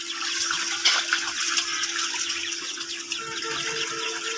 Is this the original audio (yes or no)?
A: yes